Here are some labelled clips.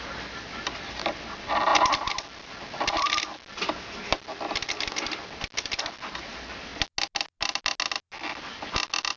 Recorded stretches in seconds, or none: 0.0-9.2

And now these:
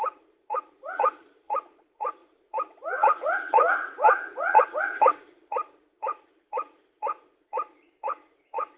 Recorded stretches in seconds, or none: none